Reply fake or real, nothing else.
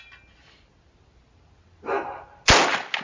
real